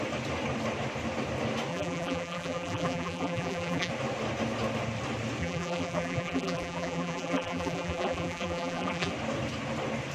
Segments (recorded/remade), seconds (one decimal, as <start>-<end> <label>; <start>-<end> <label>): 0.0-1.7 recorded; 1.7-3.9 remade; 3.9-5.4 recorded; 5.4-9.1 remade; 9.1-10.1 recorded